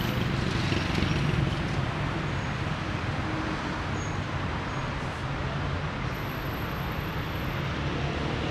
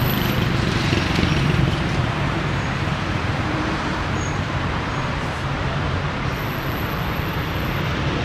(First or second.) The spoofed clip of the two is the second